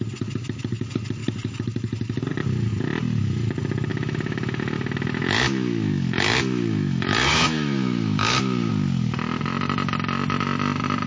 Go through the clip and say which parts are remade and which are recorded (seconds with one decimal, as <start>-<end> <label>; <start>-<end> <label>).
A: 0.0-3.9 recorded; 3.9-8.7 remade; 8.7-11.1 recorded